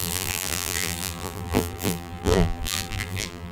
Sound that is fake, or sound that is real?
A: fake